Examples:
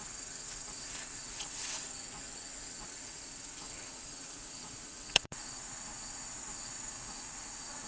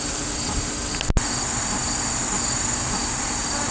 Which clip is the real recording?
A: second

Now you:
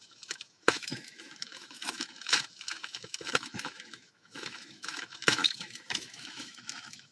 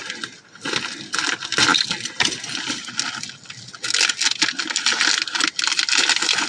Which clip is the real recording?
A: second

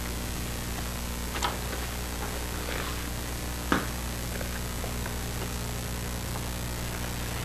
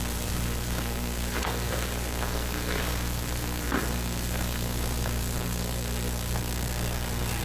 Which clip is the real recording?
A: first